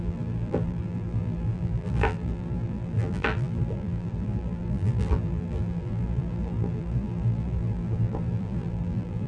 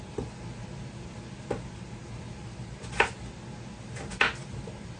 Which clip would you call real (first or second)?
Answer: second